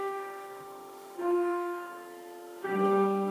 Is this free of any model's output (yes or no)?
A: no